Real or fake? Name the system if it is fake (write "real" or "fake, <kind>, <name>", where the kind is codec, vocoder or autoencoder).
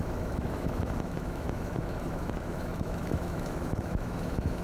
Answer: fake, autoencoder, DAC-VAE